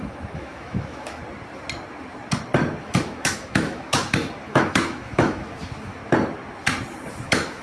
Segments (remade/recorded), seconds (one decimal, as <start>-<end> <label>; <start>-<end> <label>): 0.0-1.2 remade; 1.2-2.8 recorded; 2.8-6.0 remade; 6.0-7.1 recorded; 7.1-7.6 remade

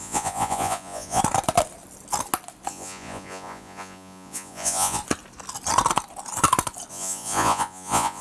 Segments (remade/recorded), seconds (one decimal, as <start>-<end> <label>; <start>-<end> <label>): 0.0-1.2 remade; 1.2-2.7 recorded; 2.7-5.0 remade; 5.0-6.9 recorded; 6.9-8.2 remade

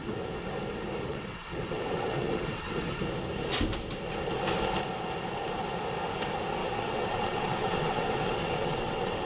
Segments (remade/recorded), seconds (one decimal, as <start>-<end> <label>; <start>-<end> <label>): 0.0-1.1 recorded; 1.1-3.0 remade; 3.0-6.6 recorded; 6.6-9.3 remade

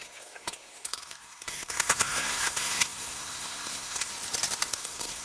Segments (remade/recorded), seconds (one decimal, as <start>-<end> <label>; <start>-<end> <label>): 0.0-4.1 remade; 4.1-4.7 recorded; 4.7-5.2 remade